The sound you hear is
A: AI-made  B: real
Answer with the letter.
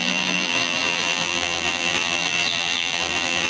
A